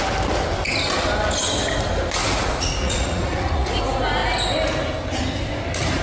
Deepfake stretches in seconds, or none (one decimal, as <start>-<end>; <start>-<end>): 2.2-3.8

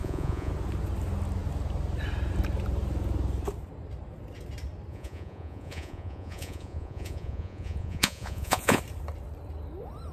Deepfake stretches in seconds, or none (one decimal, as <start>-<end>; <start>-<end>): 0.0-0.5; 4.9-8.8

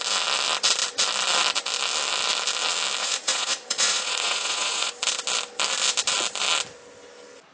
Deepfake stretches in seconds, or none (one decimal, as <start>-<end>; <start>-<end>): 3.0-4.9

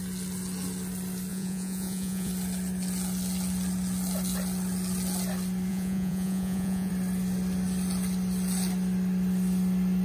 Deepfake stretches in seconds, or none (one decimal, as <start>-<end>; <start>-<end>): 1.3-2.3; 5.7-6.9

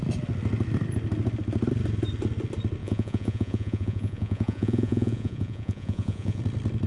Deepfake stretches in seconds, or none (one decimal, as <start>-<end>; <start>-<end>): 2.8-6.4

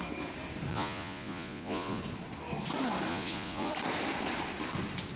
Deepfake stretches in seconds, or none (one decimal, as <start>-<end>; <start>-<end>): 0.7-2.0; 3.1-3.7